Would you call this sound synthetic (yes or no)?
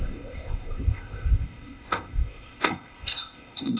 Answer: yes